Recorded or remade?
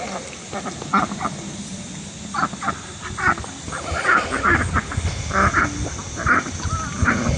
recorded